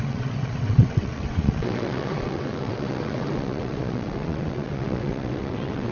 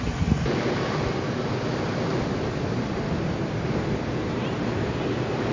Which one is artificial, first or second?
first